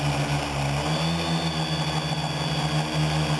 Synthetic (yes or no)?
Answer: no